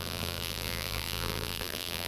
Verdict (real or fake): fake